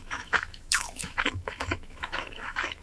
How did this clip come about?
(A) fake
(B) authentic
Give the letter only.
A